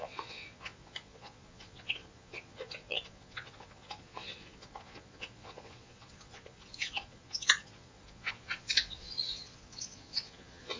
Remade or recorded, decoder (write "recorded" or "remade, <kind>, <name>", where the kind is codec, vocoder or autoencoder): remade, vocoder, Vocos